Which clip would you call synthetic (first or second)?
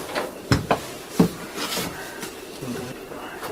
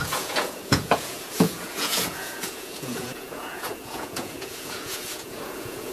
second